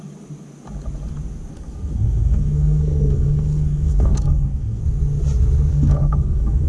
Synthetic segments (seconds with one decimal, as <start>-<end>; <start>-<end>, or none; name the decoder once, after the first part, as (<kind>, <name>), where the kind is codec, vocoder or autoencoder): 1.5-4.8 (codec, SNAC); 5.7-6.7